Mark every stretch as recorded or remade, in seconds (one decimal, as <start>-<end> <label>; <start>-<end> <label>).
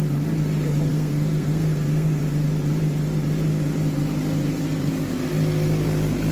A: 0.0-0.9 recorded; 0.9-2.2 remade; 2.2-6.3 recorded